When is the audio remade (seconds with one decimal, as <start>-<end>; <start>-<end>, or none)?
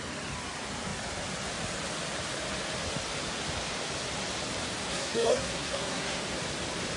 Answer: 4.9-6.2